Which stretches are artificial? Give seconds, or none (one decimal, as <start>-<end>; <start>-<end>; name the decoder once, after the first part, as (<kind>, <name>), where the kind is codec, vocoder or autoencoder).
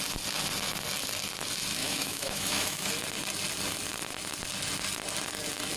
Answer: 1.8-2.9 (autoencoder, DAC-VAE)